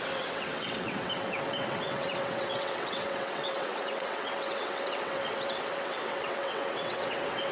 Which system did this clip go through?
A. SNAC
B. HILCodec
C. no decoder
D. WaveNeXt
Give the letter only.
D